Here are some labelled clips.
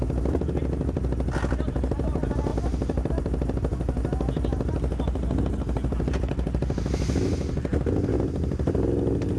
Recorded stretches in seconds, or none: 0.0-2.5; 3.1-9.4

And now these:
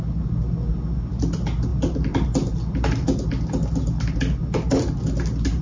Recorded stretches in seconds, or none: 0.0-5.6

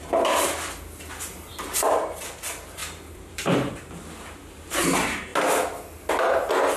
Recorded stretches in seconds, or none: 0.0-2.8; 4.0-6.8